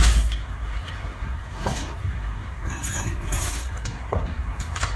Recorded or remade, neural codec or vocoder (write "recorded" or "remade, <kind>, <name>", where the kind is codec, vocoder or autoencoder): remade, codec, SNAC